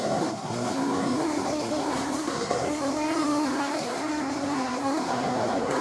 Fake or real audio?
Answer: fake